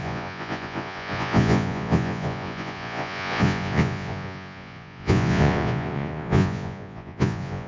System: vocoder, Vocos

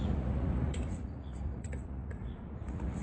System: vocoder, Vocos